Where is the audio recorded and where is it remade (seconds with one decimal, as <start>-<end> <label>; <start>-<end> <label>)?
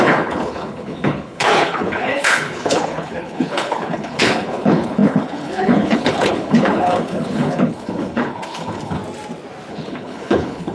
0.0-9.0 remade; 9.0-9.7 recorded; 9.7-10.7 remade